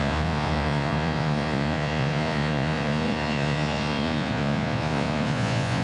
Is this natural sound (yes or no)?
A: no